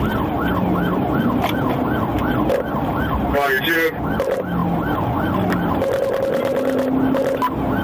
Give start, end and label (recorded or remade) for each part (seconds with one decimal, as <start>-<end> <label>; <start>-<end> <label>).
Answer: 0.0-7.8 recorded